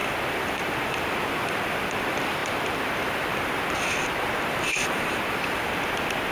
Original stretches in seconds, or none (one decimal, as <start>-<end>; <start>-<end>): none